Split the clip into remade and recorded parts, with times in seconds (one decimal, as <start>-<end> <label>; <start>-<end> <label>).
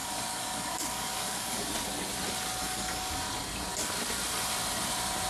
0.0-1.7 remade; 1.7-2.6 recorded; 2.6-3.2 remade; 3.2-5.3 recorded